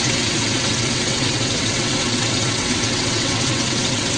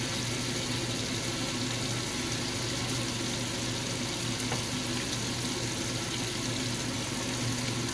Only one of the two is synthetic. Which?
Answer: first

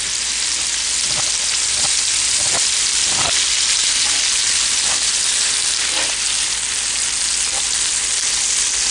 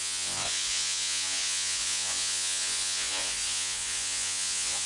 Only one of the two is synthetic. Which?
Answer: second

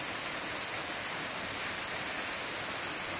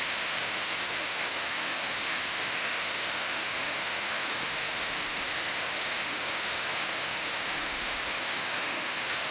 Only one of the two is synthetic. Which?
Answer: second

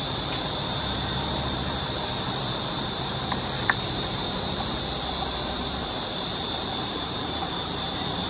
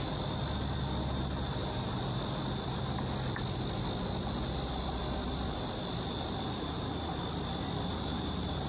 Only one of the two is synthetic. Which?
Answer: first